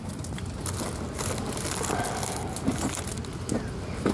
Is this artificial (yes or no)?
no